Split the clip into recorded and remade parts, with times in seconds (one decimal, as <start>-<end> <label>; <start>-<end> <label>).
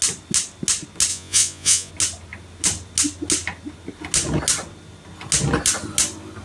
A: 0.0-1.1 recorded; 1.1-1.9 remade; 1.9-6.4 recorded